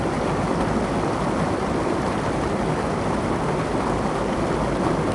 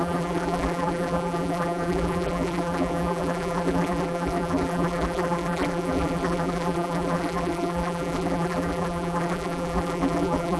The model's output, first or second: second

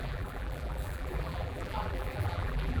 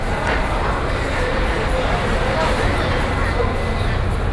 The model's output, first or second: first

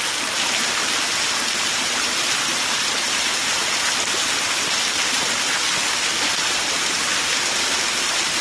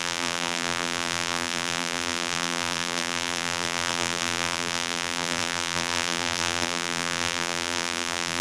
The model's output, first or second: second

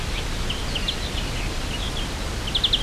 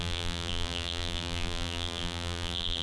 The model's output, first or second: second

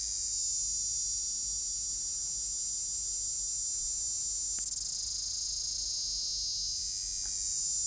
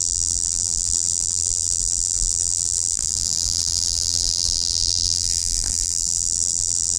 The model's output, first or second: second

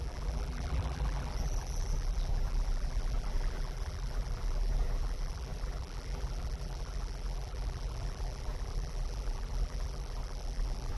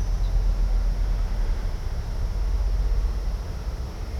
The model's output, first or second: first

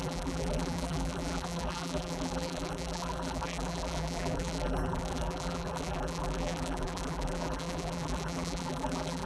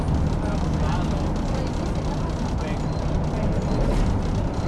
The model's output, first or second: first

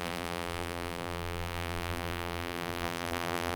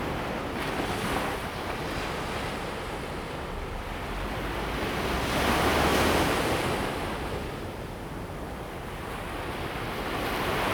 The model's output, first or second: first